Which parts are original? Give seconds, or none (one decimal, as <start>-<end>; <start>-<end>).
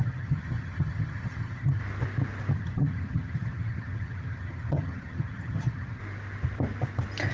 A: 1.8-2.5; 6.0-7.3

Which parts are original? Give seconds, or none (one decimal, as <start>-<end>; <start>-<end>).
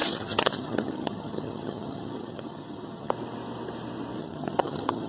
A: 3.1-4.2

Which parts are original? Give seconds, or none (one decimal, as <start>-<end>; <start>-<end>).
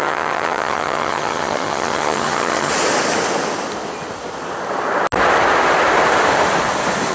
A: 2.7-7.1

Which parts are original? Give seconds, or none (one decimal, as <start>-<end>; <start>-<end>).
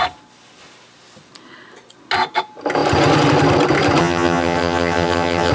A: 0.0-4.0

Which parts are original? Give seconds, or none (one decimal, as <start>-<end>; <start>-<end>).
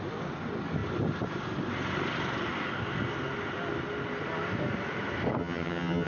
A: 0.0-5.4